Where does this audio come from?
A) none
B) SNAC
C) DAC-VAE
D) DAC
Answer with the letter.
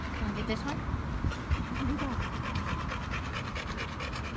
A